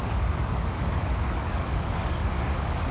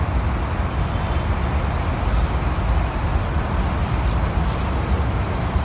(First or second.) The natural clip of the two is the second